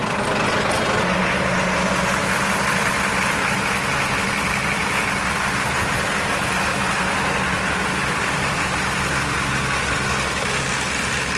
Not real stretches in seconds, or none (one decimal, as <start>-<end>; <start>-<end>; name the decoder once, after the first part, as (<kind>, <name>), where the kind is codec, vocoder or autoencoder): 2.2-3.8 (vocoder, BigVGAN v2); 6.7-9.1